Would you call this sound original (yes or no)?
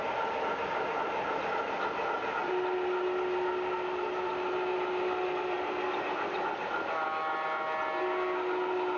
yes